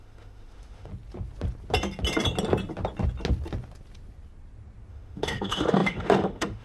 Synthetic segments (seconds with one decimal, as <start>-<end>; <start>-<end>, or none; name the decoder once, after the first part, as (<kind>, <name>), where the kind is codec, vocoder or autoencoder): 0.0-0.9 (autoencoder, DAC-VAE); 4.9-6.6